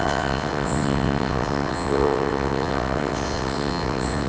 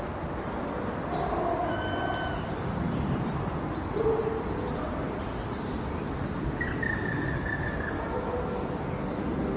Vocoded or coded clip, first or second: first